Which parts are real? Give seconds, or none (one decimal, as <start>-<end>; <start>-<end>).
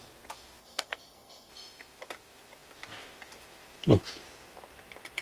0.0-0.6; 1.5-5.2